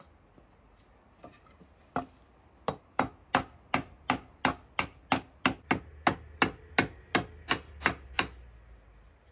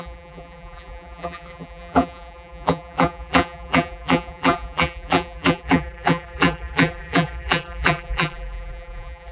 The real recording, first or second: first